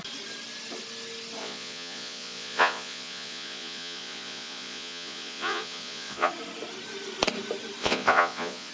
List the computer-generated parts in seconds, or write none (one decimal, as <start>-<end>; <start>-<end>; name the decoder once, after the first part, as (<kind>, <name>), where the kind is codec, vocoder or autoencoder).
1.4-6.3 (vocoder, Vocos); 7.8-8.7